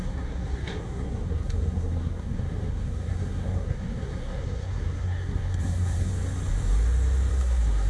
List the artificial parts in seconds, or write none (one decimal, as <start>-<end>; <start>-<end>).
0.0-6.1; 7.3-7.9